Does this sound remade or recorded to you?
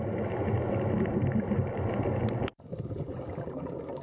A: recorded